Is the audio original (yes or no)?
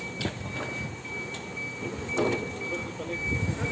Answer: yes